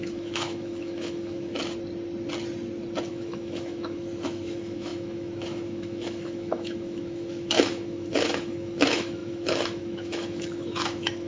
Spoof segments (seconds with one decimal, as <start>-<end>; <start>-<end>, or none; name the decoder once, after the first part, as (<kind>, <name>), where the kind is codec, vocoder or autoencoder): 0.0-1.6 (autoencoder, DAC-VAE); 3.1-11.3